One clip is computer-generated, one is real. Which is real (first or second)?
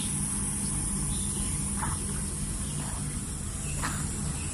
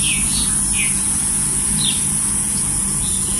first